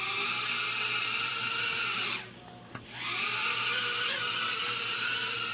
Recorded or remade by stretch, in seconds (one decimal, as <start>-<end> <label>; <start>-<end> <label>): 0.0-5.5 recorded